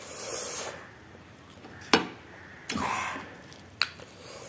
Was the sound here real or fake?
real